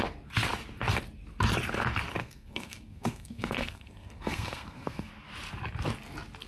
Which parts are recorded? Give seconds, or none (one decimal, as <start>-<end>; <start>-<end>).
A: 0.0-2.2; 5.1-6.5